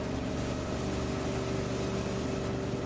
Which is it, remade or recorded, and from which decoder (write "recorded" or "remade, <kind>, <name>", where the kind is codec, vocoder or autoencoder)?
recorded